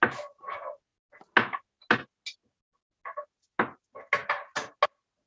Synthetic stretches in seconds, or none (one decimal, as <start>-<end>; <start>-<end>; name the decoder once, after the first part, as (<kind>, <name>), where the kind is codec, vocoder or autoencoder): none